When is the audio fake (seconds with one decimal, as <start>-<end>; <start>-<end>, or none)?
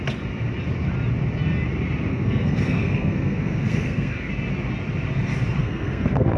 2.1-4.3; 5.6-6.4